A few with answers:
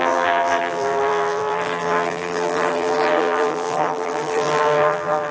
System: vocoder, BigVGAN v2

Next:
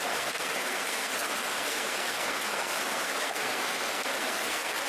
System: codec, SNAC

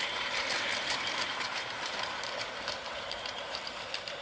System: vocoder, BigVGAN v2